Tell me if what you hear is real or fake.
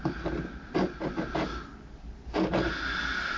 real